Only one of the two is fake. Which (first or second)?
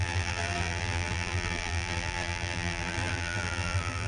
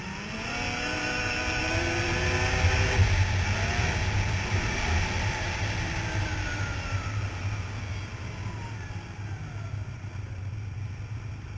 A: first